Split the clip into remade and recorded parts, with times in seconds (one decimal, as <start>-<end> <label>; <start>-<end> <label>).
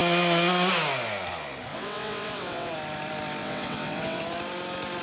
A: 0.0-1.7 recorded; 1.7-2.7 remade; 2.7-3.4 recorded; 3.4-4.2 remade; 4.2-5.0 recorded